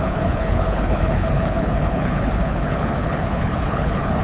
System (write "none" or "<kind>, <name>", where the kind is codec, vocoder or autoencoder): codec, HILCodec